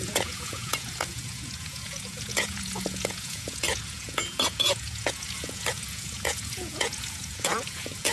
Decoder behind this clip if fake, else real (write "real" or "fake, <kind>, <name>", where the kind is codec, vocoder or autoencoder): fake, vocoder, Vocos